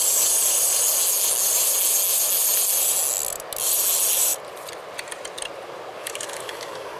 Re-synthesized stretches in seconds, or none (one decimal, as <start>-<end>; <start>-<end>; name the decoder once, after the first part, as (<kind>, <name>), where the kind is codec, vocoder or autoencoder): 6.0-7.0 (codec, DAC)